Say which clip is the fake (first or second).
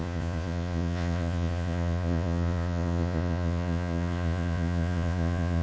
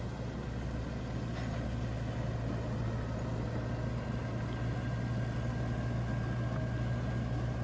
first